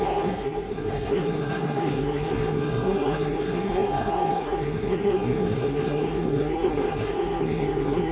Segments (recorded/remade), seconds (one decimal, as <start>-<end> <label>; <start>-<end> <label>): 0.0-8.1 remade

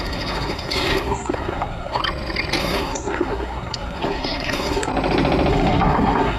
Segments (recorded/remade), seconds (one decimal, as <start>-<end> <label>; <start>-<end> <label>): 0.0-2.0 remade; 2.0-2.6 recorded; 2.6-4.9 remade; 4.9-5.5 recorded; 5.5-6.4 remade

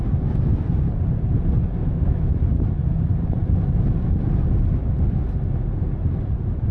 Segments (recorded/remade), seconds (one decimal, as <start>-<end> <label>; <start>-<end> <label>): 0.0-1.8 recorded; 1.8-2.3 remade; 2.3-6.7 recorded

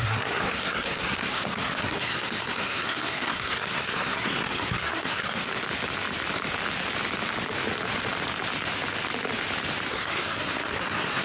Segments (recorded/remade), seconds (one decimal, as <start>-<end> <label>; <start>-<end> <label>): 0.0-5.5 remade; 5.5-9.9 recorded; 9.9-11.2 remade

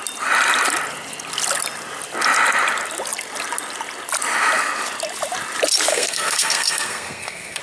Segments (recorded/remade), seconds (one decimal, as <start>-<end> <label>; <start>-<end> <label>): 0.0-5.9 recorded; 5.9-7.6 remade

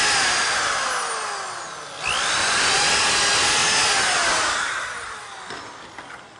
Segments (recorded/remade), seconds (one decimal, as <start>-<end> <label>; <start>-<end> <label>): 0.0-2.4 recorded; 2.4-2.9 remade; 2.9-6.4 recorded

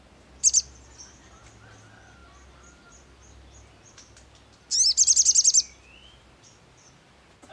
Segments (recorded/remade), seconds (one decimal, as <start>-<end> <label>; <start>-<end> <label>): 0.0-7.5 recorded

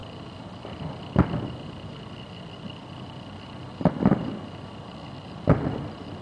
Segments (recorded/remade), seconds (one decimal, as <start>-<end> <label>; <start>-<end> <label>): 0.0-6.2 recorded